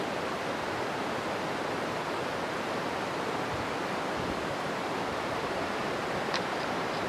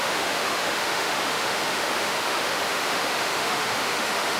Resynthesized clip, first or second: second